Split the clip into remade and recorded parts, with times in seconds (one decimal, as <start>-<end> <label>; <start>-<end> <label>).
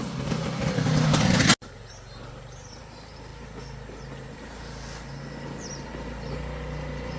0.0-7.2 recorded